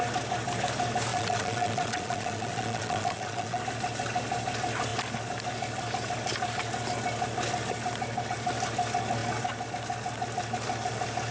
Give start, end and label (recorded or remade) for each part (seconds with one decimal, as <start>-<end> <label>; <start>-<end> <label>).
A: 0.0-1.1 recorded; 1.1-3.6 remade; 3.6-11.3 recorded